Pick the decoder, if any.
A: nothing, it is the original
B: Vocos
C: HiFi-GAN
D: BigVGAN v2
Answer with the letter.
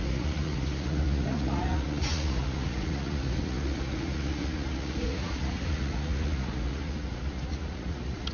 B